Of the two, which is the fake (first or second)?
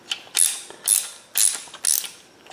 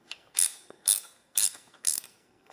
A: second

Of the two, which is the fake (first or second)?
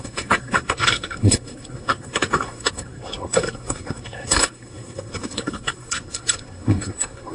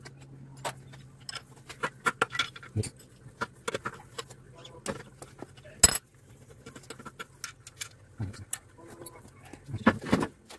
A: first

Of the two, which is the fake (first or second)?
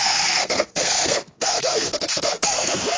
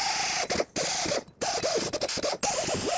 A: first